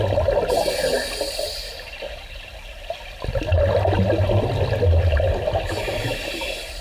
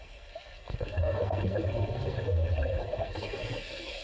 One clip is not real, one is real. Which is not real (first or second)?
second